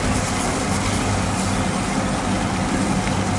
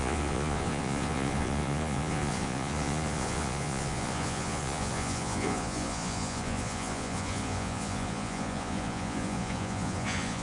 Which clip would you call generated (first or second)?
second